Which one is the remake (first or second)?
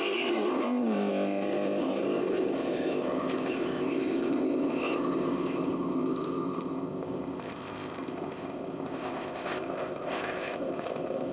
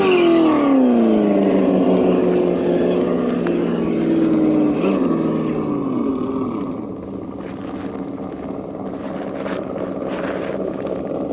first